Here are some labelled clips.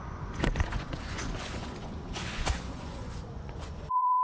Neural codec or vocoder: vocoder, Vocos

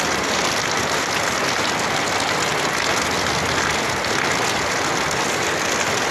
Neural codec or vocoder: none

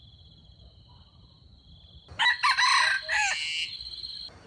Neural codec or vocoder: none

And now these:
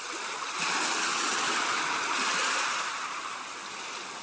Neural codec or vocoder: none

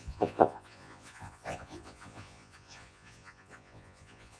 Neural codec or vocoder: vocoder, Vocos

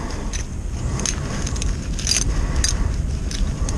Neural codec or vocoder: none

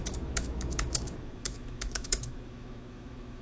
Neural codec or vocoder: autoencoder, DAC-VAE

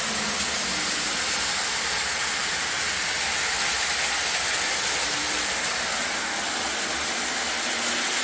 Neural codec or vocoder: none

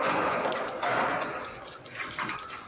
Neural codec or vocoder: vocoder, Vocos